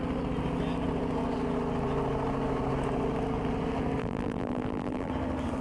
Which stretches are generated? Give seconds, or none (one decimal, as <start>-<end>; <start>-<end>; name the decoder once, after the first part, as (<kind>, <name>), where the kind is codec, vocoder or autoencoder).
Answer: 4.0-5.1 (vocoder, BigVGAN v2)